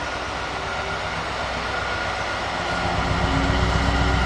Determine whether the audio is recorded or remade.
recorded